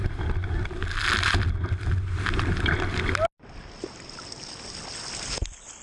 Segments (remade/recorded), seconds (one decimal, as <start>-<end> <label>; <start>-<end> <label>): 0.0-5.8 recorded